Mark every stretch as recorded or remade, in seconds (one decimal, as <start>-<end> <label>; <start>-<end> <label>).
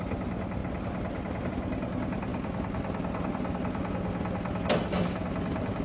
0.0-5.8 recorded